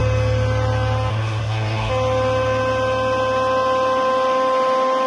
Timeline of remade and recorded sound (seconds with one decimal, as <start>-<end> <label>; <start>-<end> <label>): 0.0-1.1 recorded; 1.1-1.9 remade; 1.9-5.1 recorded